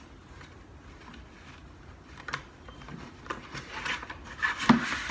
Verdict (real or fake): real